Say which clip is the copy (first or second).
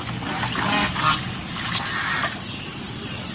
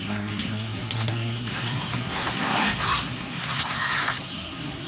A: second